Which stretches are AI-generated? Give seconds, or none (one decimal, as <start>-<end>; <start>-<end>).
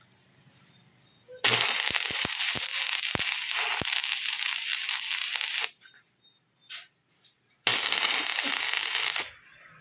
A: none